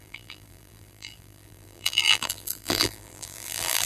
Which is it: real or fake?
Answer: fake